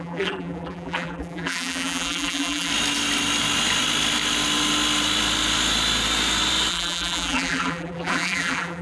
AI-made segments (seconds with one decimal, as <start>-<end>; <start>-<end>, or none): 0.0-2.7; 6.7-8.8